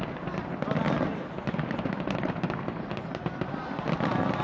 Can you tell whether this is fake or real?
real